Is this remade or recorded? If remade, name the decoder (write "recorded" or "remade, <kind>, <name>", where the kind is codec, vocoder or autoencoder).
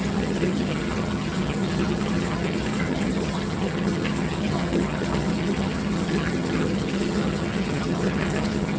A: remade, vocoder, HiFi-GAN